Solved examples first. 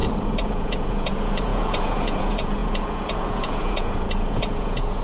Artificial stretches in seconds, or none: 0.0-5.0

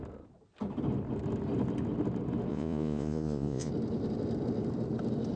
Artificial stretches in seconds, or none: 2.5-3.7

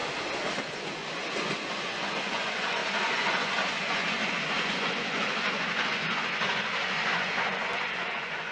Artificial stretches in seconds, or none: 0.6-8.5

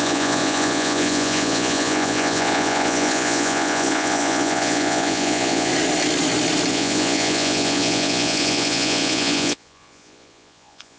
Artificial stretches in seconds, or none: 0.0-5.7; 6.7-11.0